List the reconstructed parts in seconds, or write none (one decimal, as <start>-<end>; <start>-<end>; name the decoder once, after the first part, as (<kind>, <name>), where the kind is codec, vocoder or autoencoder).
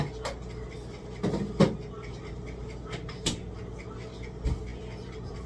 none